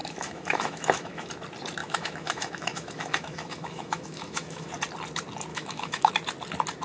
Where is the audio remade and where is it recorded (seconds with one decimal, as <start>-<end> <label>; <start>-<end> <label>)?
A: 0.0-1.3 remade; 1.3-1.8 recorded; 1.8-4.7 remade; 4.7-5.5 recorded; 5.5-6.1 remade; 6.1-6.8 recorded